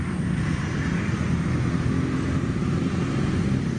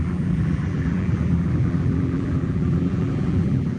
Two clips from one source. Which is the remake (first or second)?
second